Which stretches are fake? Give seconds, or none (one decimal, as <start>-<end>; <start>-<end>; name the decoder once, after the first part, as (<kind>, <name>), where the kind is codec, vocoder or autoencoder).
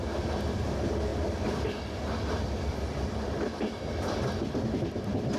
1.1-4.3 (vocoder, BigVGAN v2)